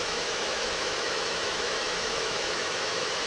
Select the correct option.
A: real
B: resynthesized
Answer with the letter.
B